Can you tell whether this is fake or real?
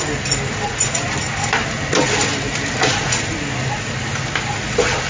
real